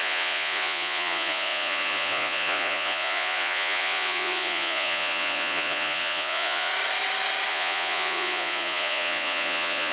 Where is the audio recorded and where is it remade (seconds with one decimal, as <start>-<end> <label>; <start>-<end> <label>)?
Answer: 0.0-6.7 remade; 6.7-7.5 recorded; 7.5-9.9 remade